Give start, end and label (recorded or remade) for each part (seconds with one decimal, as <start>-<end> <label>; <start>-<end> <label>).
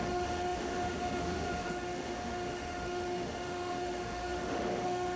0.0-5.2 remade